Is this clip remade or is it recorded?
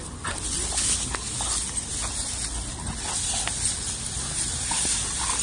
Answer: recorded